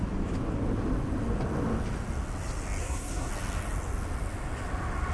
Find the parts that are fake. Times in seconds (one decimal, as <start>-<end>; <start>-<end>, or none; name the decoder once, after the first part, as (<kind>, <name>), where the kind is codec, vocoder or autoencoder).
2.8-3.3 (codec, SNAC)